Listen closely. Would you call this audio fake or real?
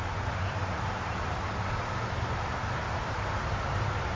real